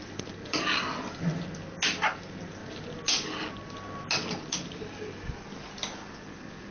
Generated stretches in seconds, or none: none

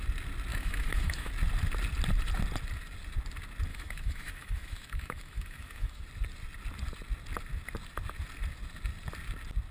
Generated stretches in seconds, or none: 0.5-1.3 (autoencoder, DAC-VAE); 3.7-6.0

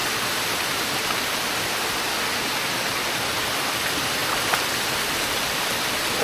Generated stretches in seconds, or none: 0.0-1.4 (vocoder, BigVGAN v2); 4.2-6.2